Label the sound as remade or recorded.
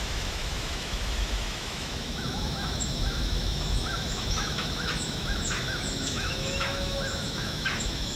remade